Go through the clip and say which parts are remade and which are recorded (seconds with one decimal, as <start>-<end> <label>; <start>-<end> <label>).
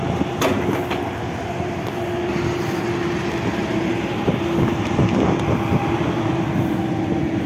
0.0-7.5 recorded